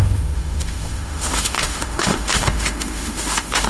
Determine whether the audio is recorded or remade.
remade